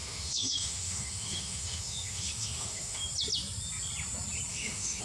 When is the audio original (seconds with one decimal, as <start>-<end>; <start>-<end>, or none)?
3.0-4.5